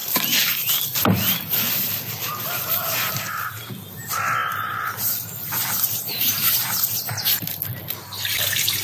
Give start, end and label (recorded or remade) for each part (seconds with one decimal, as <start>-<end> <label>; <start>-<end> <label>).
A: 0.0-2.4 remade; 2.4-4.4 recorded; 4.4-7.8 remade; 7.8-8.8 recorded